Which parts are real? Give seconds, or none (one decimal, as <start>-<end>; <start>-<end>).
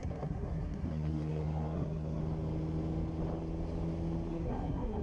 2.2-4.3